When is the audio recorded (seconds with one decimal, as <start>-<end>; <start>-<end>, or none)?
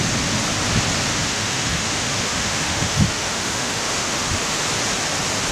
0.0-1.3; 4.6-5.5